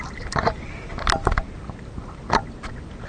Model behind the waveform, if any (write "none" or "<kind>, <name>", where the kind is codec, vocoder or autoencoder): none